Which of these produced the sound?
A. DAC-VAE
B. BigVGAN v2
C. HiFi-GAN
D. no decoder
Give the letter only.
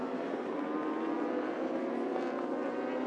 D